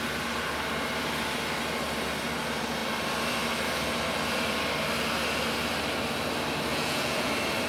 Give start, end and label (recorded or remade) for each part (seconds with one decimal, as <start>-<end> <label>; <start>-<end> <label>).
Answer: 0.0-6.7 recorded; 6.7-7.3 remade; 7.3-7.7 recorded